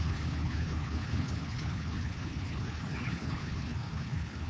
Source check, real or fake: fake